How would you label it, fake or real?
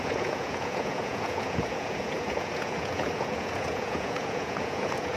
fake